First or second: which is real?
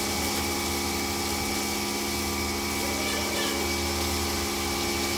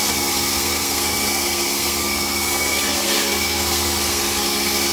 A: first